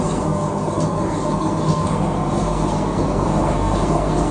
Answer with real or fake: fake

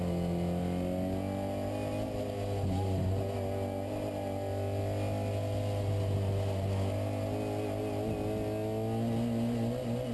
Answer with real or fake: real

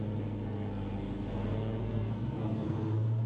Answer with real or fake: fake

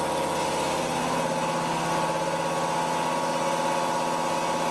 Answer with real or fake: real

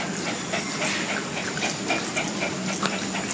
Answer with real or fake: real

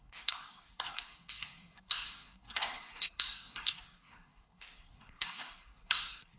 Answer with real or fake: fake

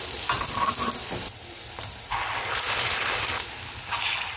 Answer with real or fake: real